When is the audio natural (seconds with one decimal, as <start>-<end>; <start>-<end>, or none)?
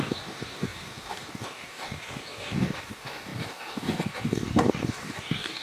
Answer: none